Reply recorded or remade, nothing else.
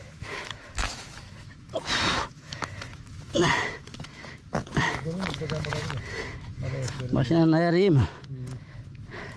remade